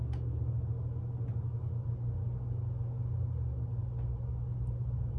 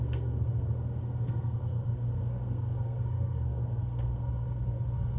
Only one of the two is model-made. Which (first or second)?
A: second